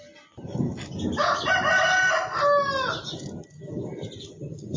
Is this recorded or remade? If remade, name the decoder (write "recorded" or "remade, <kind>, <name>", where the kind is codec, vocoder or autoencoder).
recorded